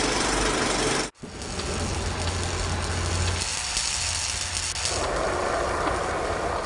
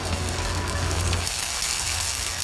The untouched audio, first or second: first